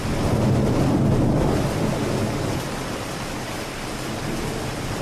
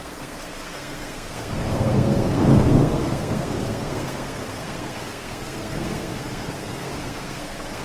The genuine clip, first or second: first